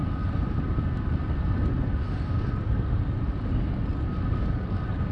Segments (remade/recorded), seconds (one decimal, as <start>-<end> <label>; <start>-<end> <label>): 0.0-5.1 recorded